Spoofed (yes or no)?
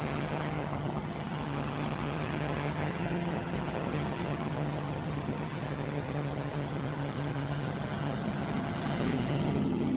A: yes